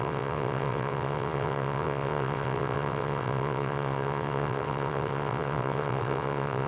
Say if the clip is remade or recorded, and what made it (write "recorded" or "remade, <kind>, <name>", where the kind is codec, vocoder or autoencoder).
remade, vocoder, WaveNeXt